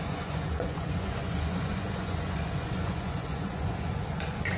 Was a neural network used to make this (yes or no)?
yes